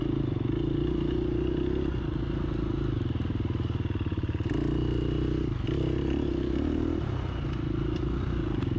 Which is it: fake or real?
real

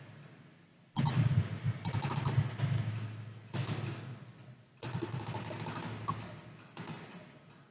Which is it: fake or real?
real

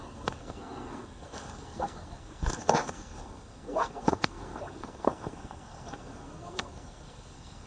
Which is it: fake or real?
fake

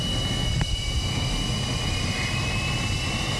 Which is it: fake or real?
real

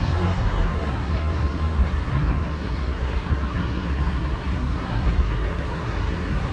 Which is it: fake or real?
fake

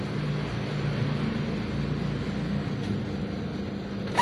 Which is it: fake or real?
real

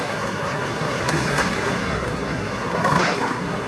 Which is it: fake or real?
fake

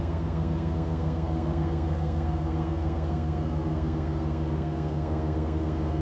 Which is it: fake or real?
fake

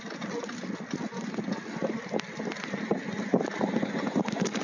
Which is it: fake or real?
real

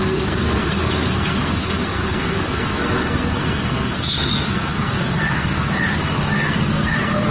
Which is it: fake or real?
fake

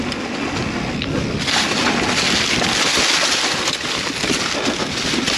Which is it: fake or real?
real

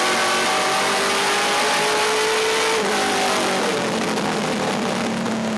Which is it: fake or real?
real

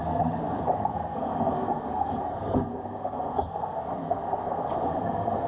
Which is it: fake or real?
fake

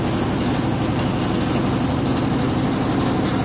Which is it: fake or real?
real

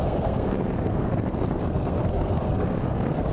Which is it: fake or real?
fake